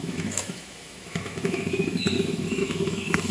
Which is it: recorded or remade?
remade